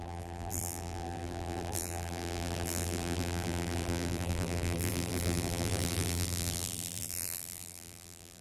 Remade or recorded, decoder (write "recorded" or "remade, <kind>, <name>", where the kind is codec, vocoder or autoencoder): remade, vocoder, BigVGAN v2